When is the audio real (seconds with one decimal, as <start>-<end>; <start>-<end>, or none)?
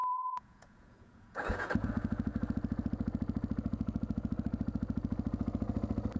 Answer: 1.9-6.2